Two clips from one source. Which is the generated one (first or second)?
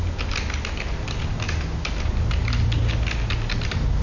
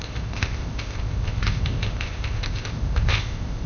second